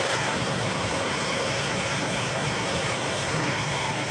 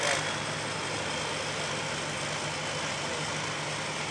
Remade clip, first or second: first